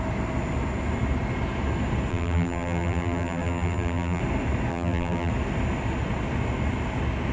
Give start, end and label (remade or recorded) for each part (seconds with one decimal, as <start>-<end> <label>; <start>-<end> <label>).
0.0-2.1 recorded; 2.1-4.2 remade; 4.2-4.7 recorded; 4.7-5.3 remade; 5.3-7.3 recorded